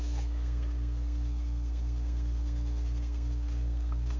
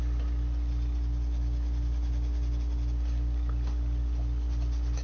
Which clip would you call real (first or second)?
second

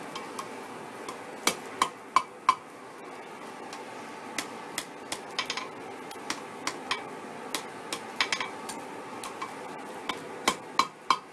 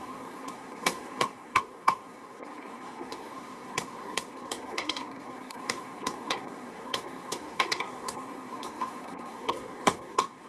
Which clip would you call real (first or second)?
first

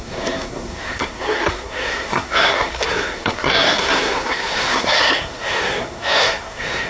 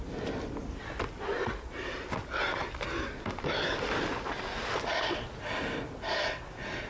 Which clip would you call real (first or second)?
second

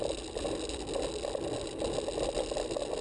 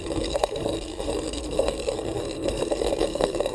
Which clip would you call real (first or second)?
first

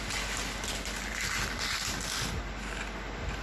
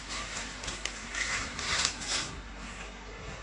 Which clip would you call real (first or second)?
first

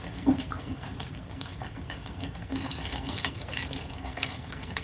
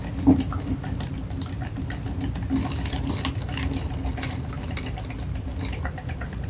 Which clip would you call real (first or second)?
second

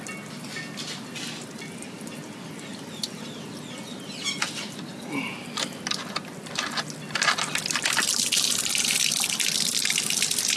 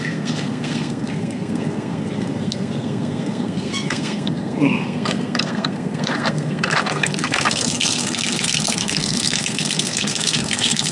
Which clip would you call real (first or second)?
first